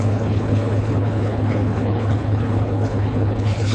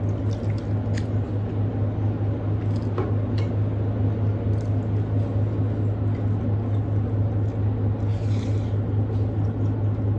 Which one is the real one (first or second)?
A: second